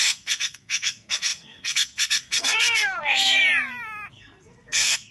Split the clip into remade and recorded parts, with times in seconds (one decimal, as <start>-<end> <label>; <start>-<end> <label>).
0.0-3.4 remade; 3.4-4.1 recorded; 4.1-5.1 remade